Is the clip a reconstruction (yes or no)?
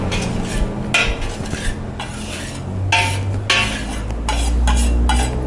no